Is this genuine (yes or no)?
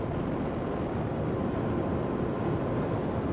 yes